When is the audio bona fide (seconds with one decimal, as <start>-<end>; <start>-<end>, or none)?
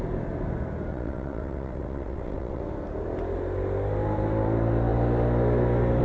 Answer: 0.0-0.9; 2.6-6.0